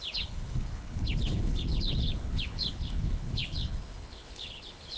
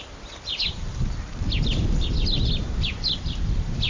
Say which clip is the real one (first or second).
second